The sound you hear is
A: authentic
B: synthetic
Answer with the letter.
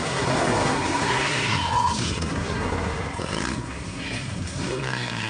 B